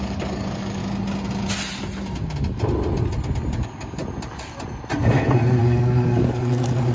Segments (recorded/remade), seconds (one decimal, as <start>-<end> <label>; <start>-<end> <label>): 0.0-0.8 remade; 0.8-3.6 recorded; 3.6-4.0 remade; 4.0-5.6 recorded; 5.6-6.9 remade

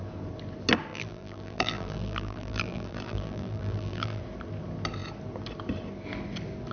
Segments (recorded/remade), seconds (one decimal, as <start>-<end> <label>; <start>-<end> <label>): 0.0-0.9 recorded; 0.9-4.2 remade; 4.2-6.7 recorded

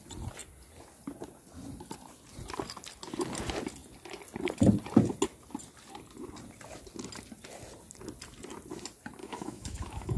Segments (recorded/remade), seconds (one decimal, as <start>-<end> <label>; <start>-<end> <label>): 0.0-9.2 recorded; 9.2-10.2 remade

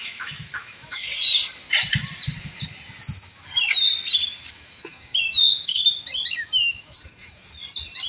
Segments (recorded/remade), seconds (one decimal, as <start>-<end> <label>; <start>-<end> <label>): 0.0-1.1 remade; 1.1-4.5 recorded; 4.5-5.8 remade; 5.8-6.3 recorded; 6.3-7.5 remade; 7.5-8.1 recorded

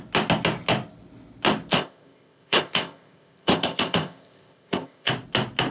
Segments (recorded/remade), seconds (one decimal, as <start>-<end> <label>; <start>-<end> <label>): 0.0-1.7 recorded; 1.7-5.1 remade; 5.1-5.7 recorded